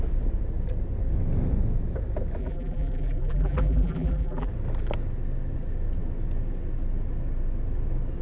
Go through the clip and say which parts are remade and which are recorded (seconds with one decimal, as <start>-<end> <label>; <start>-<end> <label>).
0.0-2.4 recorded; 2.4-4.5 remade; 4.5-8.2 recorded